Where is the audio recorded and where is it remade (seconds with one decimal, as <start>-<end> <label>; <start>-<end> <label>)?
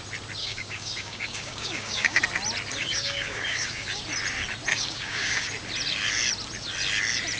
0.0-0.4 recorded; 0.4-2.2 remade; 2.2-2.8 recorded; 2.8-4.0 remade; 4.0-4.7 recorded; 4.7-5.5 remade; 5.5-7.4 recorded